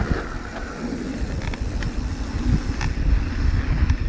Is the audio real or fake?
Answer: real